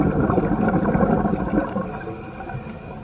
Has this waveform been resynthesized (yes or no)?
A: no